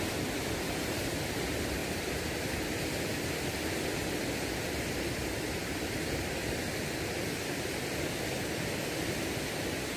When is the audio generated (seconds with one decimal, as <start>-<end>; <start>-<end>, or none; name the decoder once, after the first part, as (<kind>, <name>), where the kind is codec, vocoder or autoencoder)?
0.0-10.0 (vocoder, BigVGAN v2)